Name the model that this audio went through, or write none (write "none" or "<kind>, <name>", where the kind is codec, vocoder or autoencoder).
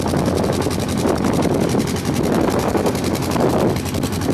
none